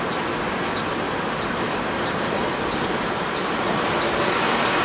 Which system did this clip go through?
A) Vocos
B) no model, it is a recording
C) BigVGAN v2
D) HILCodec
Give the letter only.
B